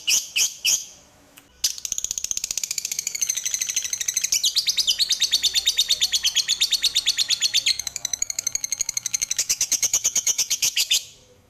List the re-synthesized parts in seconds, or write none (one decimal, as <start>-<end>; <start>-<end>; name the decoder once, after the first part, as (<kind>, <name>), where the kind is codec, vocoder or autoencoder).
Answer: 0.0-1.4 (autoencoder, DAC-VAE); 2.6-3.4; 7.8-11.5